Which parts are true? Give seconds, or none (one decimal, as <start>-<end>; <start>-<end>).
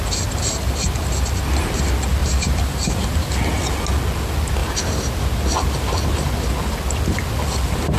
0.0-2.2; 3.2-4.6; 5.4-8.0